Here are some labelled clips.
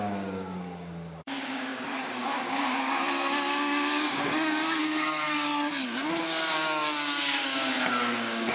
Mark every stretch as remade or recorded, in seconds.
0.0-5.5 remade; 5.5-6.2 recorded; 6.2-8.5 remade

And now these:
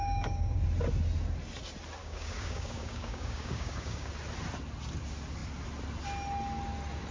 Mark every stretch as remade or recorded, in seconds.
0.0-0.6 remade; 0.6-2.0 recorded; 2.0-4.1 remade; 4.1-7.1 recorded